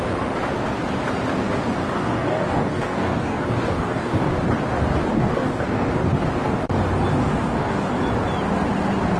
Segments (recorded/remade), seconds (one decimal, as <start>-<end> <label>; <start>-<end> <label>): 0.0-1.8 recorded; 1.8-4.3 remade; 4.3-5.1 recorded; 5.1-5.9 remade; 5.9-7.2 recorded; 7.2-7.9 remade; 7.9-9.2 recorded